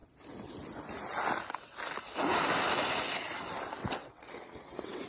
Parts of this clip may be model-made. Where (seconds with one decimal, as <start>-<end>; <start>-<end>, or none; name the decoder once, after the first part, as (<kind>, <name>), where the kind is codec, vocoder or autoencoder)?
3.8-5.1 (vocoder, WaveNeXt)